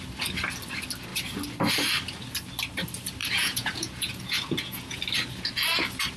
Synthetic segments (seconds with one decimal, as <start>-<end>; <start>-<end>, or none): 3.2-5.0